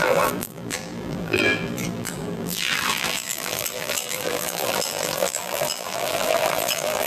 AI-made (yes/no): yes